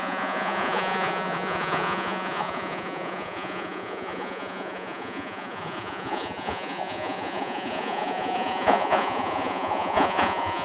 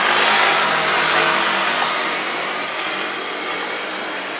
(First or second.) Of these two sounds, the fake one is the first